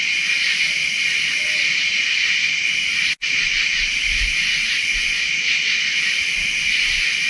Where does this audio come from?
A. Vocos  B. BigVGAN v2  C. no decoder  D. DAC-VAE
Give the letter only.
C